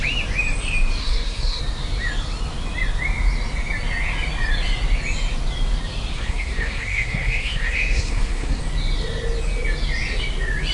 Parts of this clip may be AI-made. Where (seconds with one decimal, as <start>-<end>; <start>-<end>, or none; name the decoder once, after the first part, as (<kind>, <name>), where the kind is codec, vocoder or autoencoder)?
1.0-1.6 (codec, SNAC); 6.1-8.6